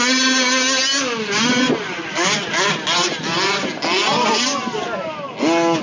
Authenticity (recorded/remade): recorded